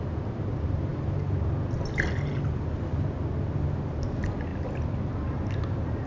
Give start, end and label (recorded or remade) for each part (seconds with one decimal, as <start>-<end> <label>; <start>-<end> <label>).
0.0-6.1 recorded